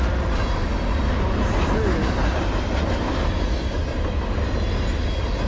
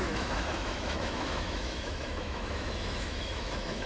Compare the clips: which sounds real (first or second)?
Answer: first